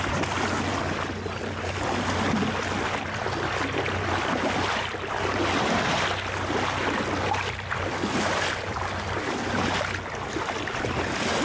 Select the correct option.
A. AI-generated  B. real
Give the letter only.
B